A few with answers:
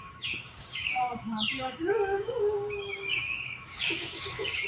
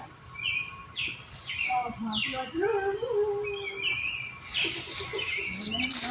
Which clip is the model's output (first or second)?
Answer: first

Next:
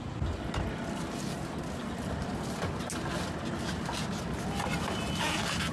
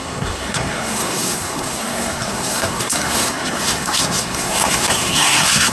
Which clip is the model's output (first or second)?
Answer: second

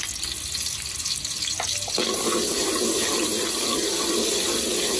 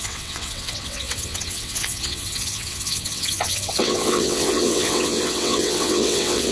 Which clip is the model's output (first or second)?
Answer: second